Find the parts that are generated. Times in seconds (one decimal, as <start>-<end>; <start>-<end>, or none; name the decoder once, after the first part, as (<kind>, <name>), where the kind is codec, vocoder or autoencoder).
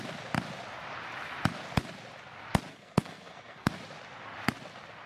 2.7-3.7 (codec, SNAC)